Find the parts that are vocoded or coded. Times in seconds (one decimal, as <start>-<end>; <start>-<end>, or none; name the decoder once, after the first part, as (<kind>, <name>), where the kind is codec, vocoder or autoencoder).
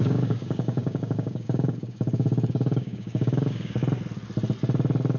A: 0.0-3.8 (codec, DAC)